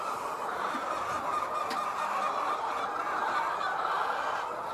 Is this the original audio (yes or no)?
yes